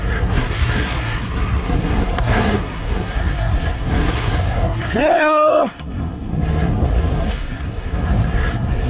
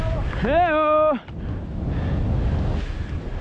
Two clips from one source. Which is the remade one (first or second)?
first